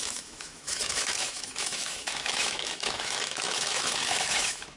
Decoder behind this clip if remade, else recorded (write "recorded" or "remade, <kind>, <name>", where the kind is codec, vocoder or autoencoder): remade, autoencoder, DAC-VAE